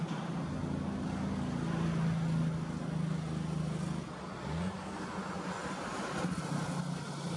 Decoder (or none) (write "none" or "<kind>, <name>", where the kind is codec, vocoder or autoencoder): none